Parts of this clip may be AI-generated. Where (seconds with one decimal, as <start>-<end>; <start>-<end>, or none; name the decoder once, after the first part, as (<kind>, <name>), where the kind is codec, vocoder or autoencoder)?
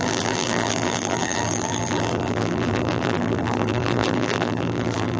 0.0-5.2 (vocoder, BigVGAN v2)